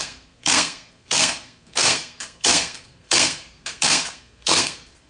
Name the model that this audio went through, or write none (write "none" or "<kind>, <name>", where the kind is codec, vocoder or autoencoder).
codec, SNAC